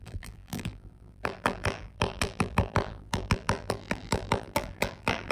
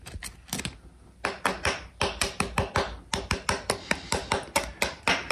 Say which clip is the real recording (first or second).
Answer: second